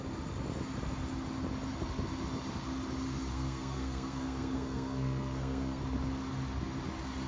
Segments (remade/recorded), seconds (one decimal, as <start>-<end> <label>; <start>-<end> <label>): 0.0-3.3 recorded; 3.3-5.8 remade; 5.8-7.3 recorded